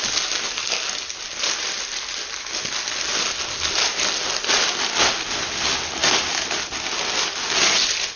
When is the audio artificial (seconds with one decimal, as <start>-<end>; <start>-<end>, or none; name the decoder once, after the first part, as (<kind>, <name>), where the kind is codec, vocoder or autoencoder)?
none